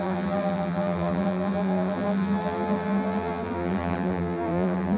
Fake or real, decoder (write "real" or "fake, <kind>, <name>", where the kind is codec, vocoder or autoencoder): fake, vocoder, BigVGAN v2